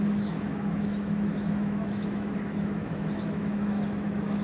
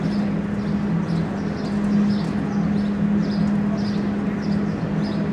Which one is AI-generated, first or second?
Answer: first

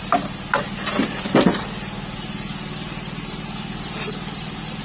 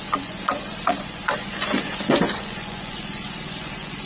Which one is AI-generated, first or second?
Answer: second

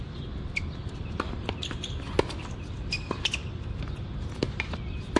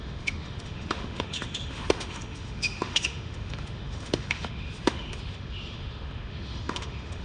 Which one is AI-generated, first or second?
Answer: second